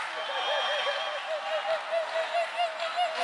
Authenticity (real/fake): real